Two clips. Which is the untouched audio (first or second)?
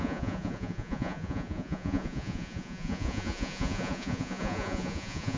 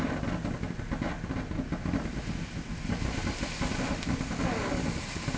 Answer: second